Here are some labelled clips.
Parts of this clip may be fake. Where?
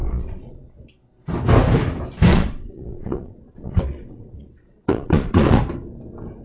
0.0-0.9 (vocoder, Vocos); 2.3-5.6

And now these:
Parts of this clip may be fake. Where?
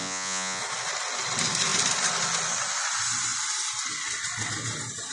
0.0-0.6 (vocoder, Vocos)